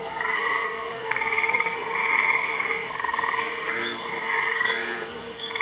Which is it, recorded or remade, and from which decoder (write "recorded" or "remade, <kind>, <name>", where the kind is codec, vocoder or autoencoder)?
remade, codec, SNAC